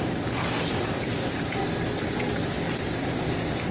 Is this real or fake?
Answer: real